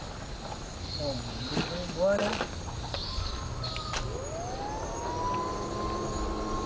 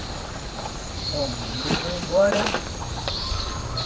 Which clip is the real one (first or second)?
first